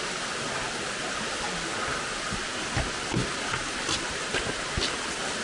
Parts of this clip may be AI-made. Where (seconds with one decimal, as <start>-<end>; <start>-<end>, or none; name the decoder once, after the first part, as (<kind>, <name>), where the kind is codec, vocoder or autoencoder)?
none